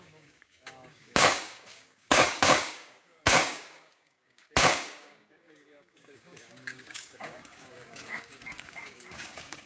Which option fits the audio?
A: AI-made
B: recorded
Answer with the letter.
A